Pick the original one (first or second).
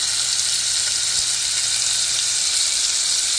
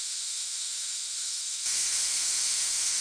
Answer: first